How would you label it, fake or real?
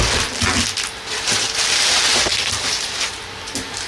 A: real